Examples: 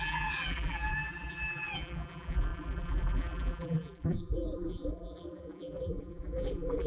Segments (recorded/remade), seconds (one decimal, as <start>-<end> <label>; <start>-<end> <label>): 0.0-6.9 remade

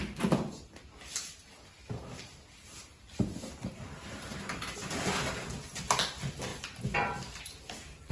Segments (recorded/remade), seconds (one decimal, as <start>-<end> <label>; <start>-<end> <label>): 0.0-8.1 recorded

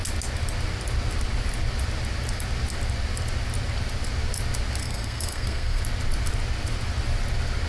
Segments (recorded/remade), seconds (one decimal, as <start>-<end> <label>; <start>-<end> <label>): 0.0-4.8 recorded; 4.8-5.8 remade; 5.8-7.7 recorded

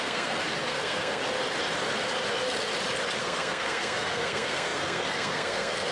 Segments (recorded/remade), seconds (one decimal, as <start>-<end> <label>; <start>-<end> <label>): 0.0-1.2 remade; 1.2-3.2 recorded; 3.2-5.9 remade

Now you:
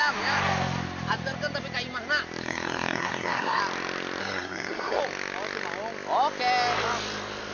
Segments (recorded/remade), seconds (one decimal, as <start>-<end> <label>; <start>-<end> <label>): 0.0-2.4 recorded; 2.4-3.6 remade; 3.6-4.2 recorded; 4.2-5.0 remade; 5.0-7.5 recorded

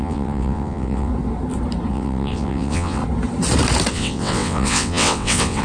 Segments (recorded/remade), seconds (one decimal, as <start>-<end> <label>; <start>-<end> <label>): 0.0-1.1 remade; 1.1-1.9 recorded; 1.9-3.0 remade; 3.0-3.9 recorded; 3.9-5.6 remade

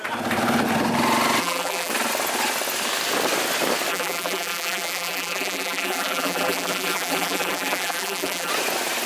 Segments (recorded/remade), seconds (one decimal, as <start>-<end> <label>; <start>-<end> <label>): 0.0-1.4 recorded; 1.4-1.9 remade; 1.9-3.9 recorded; 3.9-8.5 remade; 8.5-9.1 recorded